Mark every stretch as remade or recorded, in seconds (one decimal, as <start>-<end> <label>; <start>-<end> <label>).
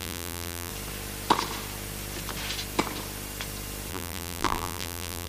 0.0-0.7 remade; 0.7-3.9 recorded; 3.9-5.3 remade